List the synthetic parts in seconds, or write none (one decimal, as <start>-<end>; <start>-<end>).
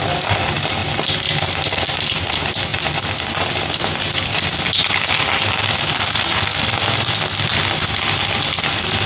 0.8-1.8; 6.5-8.2